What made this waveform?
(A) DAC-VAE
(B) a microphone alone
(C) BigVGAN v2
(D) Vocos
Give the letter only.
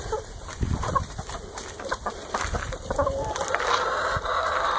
C